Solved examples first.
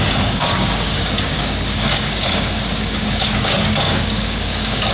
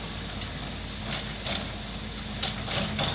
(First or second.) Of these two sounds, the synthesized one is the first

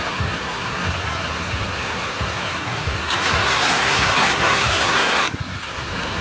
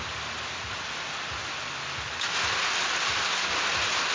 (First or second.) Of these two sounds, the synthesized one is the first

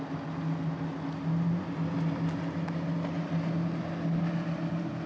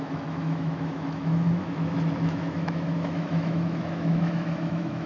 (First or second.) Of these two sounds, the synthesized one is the second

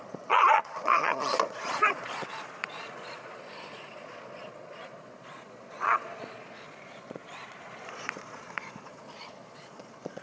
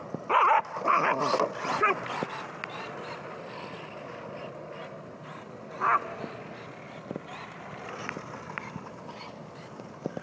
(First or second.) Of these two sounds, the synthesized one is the first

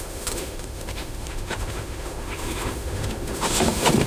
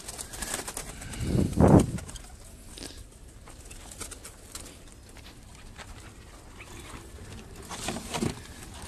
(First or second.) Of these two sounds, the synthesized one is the first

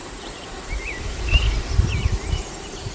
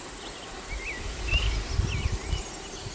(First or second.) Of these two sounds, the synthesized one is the first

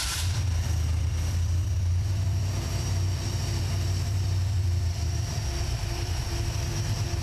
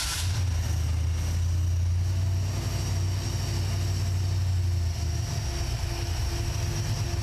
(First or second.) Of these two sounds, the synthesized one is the first